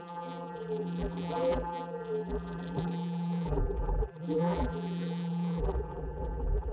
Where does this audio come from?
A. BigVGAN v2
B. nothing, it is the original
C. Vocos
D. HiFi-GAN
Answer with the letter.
A